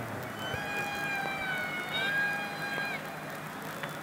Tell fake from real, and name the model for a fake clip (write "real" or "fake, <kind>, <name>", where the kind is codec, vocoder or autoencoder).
real